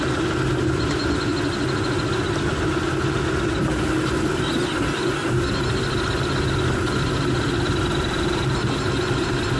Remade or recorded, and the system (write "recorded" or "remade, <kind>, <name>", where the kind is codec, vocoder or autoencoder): recorded